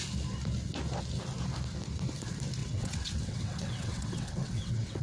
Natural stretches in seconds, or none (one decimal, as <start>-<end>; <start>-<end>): 0.0-2.6